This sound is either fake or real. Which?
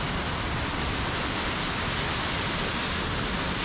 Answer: real